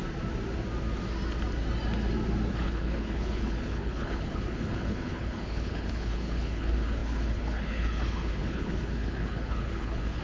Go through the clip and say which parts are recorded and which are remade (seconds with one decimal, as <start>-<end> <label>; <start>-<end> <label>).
0.0-2.5 recorded; 2.5-10.2 remade